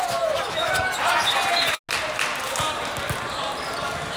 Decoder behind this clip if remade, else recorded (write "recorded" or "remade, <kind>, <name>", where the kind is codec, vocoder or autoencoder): recorded